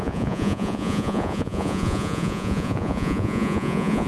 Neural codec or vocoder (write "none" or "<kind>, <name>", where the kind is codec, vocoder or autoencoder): vocoder, Vocos